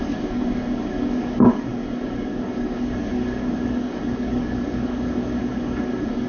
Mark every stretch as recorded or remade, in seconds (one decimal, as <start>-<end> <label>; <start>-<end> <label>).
0.0-6.3 remade